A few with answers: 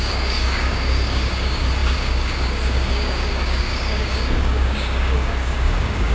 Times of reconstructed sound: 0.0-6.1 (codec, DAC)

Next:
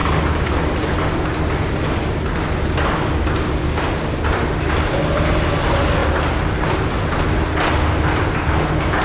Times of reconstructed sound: none